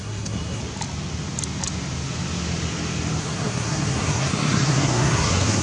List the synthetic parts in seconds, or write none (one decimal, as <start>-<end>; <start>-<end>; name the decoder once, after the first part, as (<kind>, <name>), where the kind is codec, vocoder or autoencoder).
0.0-0.6 (codec, SNAC); 3.2-5.6